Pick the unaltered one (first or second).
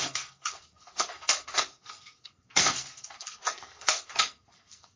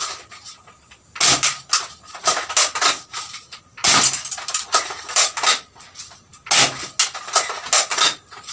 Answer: second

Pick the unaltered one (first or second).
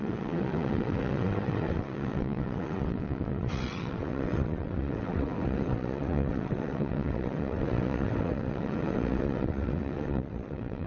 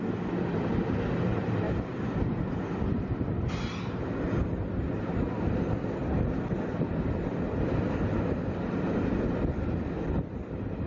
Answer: second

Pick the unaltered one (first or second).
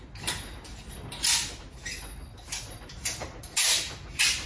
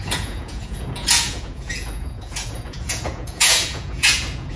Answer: first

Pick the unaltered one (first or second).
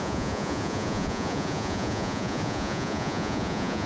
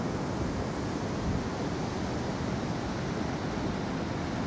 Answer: second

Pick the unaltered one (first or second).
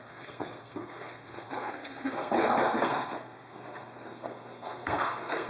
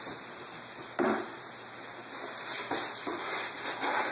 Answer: second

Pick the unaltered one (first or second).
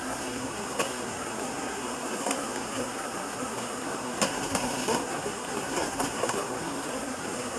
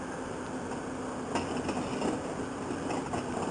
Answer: second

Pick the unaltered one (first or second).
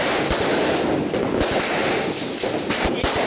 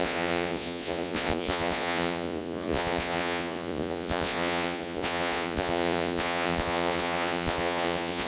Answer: first